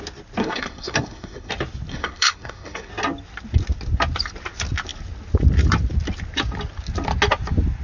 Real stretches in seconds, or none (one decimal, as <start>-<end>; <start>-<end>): 0.0-0.4; 1.5-1.9; 2.9-7.8